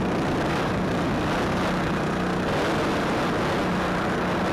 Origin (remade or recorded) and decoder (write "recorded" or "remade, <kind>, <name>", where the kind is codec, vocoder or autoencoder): recorded